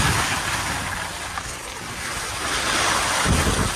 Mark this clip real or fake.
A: real